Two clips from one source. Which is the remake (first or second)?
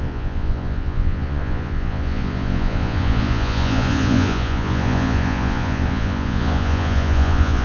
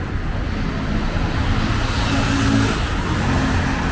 first